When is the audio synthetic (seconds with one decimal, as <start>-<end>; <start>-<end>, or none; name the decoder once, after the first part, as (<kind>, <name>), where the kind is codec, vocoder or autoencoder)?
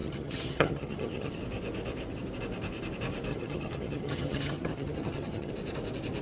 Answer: 0.0-1.4 (vocoder, HiFi-GAN); 3.3-5.5